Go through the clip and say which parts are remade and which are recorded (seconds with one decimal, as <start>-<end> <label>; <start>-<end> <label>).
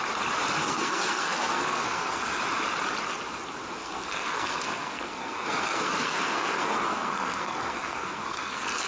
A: 0.0-0.6 recorded; 0.6-2.4 remade; 2.4-3.8 recorded; 3.8-8.9 remade